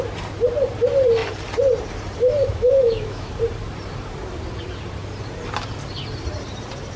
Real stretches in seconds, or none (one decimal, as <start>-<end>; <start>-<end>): 0.0-2.4; 3.3-7.0